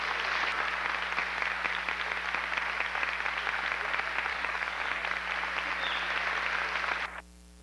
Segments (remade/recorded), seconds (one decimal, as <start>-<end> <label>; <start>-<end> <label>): 0.0-4.3 recorded; 4.3-5.0 remade; 5.0-7.6 recorded

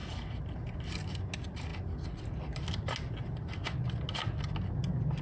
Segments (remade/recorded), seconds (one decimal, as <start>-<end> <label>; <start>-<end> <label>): 0.0-5.2 recorded

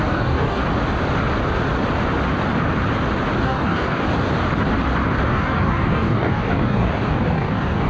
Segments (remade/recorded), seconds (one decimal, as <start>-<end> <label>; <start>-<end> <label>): 0.0-0.6 remade; 0.6-3.4 recorded; 3.4-4.0 remade; 4.0-5.3 recorded; 5.3-7.9 remade